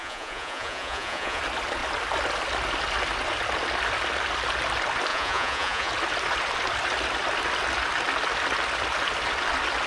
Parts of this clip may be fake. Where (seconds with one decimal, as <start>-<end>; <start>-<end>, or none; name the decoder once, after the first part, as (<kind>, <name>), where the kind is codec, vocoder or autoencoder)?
0.0-1.4 (vocoder, Vocos); 5.1-5.9